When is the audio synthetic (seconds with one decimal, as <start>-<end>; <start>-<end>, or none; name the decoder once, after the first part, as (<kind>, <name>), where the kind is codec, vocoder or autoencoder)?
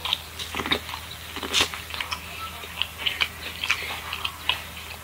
none